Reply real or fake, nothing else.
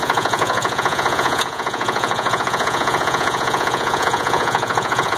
fake